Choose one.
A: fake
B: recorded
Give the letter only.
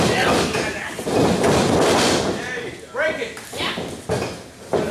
B